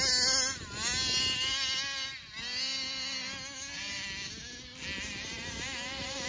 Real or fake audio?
real